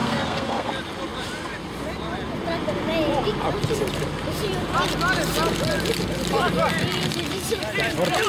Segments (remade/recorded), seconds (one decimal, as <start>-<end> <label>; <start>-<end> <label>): 0.0-0.7 remade; 0.7-8.3 recorded